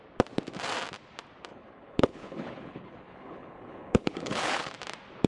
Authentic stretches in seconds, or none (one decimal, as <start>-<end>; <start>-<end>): 0.0-1.5; 4.7-5.3